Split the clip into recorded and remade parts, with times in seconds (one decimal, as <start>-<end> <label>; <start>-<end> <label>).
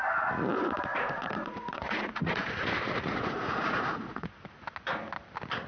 0.0-0.9 recorded; 0.9-4.3 remade; 4.3-5.7 recorded